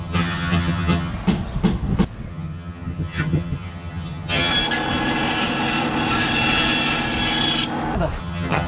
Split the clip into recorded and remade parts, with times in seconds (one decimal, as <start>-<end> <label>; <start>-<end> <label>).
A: 0.0-1.1 remade; 1.1-2.3 recorded; 2.3-4.5 remade; 4.5-8.2 recorded; 8.2-8.7 remade